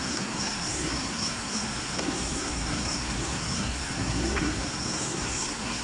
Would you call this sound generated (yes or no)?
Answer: yes